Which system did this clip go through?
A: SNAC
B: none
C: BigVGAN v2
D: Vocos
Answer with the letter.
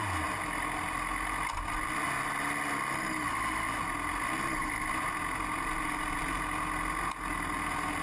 B